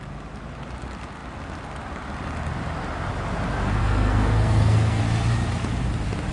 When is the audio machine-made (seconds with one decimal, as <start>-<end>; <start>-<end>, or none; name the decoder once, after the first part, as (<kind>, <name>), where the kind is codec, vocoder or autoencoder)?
3.8-5.0 (codec, SNAC)

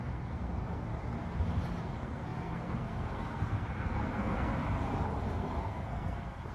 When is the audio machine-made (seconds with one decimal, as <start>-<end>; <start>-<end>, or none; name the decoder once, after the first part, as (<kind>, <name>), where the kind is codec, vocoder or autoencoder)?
0.0-0.9 (codec, SNAC); 1.8-4.5; 5.3-6.5

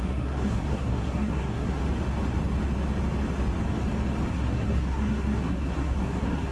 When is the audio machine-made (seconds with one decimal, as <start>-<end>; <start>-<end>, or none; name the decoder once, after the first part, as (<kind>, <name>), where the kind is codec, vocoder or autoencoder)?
0.0-1.8 (codec, SNAC); 4.3-6.5

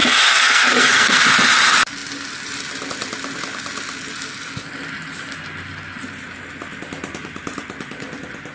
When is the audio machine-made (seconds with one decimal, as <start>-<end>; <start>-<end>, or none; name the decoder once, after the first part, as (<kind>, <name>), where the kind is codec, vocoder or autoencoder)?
0.0-1.2 (codec, SNAC)